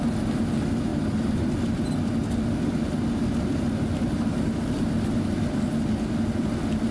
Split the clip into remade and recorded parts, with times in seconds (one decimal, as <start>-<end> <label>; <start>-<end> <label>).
0.0-6.9 recorded